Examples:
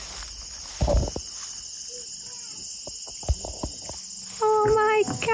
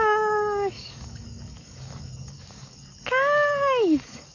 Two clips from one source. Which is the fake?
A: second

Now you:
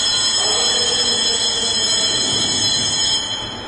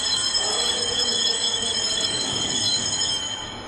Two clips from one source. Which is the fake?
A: second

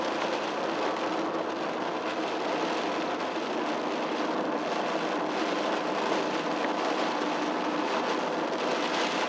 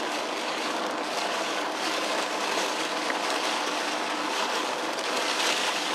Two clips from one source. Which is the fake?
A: second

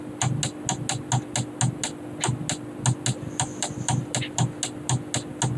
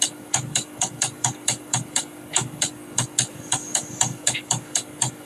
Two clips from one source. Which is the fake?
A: second